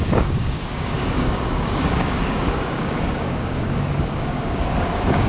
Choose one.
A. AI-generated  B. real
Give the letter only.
A